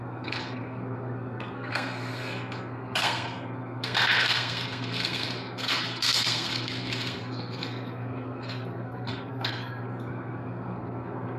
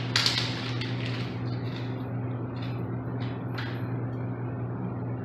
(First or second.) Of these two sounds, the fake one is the first